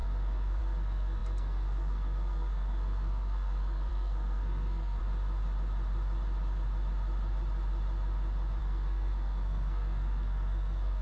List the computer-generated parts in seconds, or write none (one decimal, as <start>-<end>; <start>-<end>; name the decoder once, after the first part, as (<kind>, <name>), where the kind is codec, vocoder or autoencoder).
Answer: 0.0-5.0 (codec, SNAC); 8.6-11.0